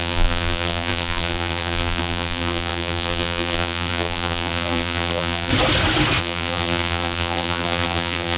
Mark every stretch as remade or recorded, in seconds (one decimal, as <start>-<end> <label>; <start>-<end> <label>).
0.0-5.5 remade; 5.5-6.2 recorded; 6.2-8.4 remade